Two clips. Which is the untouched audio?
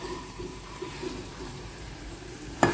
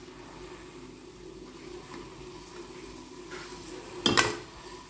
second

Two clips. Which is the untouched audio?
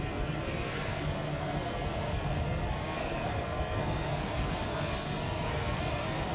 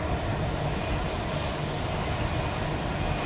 second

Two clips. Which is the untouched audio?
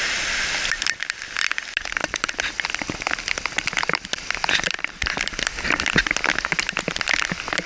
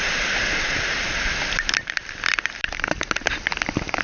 first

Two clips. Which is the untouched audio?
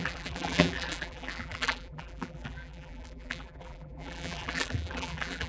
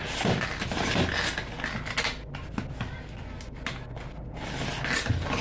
second